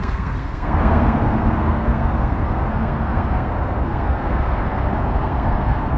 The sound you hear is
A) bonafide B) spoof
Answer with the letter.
B